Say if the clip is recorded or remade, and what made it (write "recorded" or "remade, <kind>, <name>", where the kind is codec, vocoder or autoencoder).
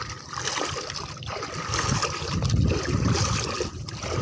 recorded